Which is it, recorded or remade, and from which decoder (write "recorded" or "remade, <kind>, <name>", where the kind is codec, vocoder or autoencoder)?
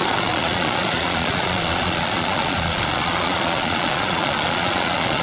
remade, vocoder, Vocos